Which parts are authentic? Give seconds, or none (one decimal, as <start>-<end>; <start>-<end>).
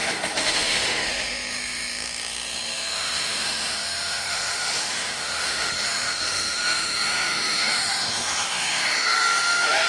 none